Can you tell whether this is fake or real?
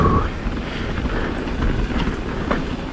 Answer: real